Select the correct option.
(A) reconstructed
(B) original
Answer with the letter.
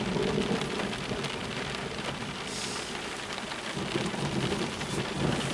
B